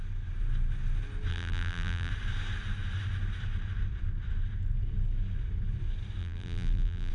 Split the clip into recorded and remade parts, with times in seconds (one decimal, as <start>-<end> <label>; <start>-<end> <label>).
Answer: 0.0-1.3 recorded; 1.3-2.1 remade; 2.1-6.2 recorded; 6.2-7.1 remade